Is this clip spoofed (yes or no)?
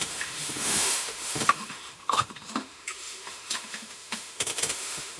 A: yes